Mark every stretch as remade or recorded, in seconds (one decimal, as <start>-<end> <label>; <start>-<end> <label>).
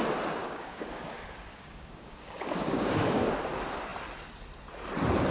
0.0-0.4 recorded; 0.4-1.1 remade; 1.1-1.5 recorded; 1.5-3.4 remade; 3.4-5.3 recorded